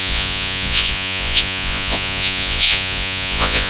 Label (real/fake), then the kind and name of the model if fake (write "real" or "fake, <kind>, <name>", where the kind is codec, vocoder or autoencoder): fake, vocoder, Vocos